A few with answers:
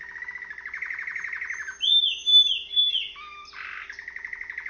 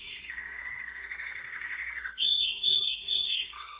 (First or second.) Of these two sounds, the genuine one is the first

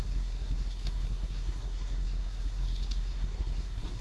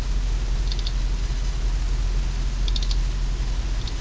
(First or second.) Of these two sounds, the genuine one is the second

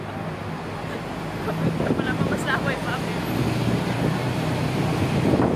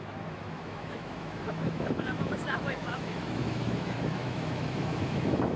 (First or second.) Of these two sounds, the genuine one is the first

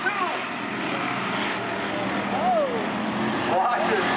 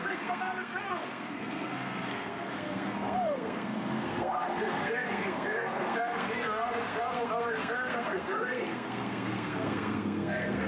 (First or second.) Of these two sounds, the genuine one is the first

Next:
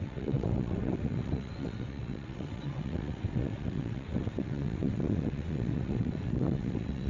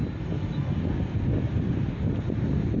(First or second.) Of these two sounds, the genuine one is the second